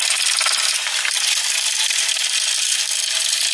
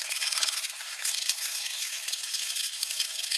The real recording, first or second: first